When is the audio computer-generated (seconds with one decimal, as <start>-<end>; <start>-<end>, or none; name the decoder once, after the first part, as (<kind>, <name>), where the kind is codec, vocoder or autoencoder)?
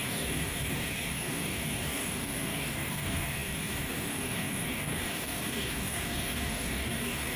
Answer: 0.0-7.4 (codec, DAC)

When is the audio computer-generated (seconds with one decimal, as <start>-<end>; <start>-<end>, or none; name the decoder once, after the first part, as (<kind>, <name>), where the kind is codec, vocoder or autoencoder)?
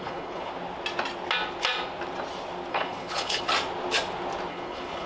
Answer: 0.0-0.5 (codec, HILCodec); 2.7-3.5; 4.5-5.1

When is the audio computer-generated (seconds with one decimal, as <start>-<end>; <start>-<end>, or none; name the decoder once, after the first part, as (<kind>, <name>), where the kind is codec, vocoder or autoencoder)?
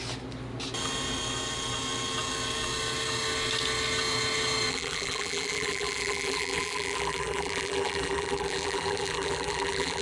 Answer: 4.7-10.0 (vocoder, BigVGAN v2)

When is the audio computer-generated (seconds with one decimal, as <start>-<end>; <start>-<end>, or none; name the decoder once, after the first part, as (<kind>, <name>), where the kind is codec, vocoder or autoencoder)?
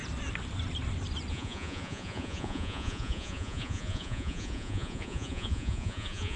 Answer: 1.3-6.4 (vocoder, Vocos)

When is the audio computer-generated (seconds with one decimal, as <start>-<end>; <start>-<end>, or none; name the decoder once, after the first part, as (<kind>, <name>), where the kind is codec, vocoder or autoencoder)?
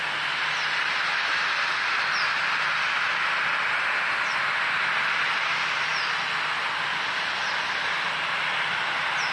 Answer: none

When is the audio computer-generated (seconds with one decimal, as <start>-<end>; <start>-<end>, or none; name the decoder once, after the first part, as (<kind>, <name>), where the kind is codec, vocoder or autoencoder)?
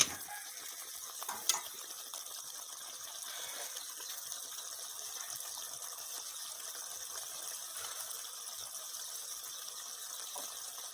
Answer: none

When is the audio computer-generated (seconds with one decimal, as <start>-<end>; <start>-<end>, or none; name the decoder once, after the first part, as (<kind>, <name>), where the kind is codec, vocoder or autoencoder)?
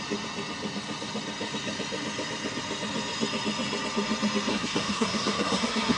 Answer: 4.5-6.0 (codec, SNAC)